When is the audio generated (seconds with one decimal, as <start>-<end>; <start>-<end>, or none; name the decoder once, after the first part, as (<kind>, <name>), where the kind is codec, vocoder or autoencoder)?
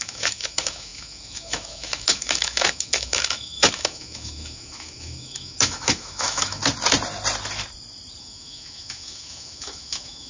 0.0-6.6 (autoencoder, DAC-VAE); 8.2-10.3